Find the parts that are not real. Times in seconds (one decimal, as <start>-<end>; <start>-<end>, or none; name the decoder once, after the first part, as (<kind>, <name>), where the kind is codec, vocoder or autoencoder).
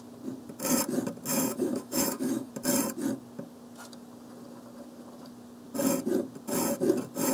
1.3-2.5 (autoencoder, DAC-VAE)